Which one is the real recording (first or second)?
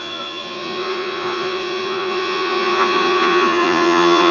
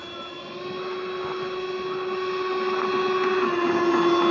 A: second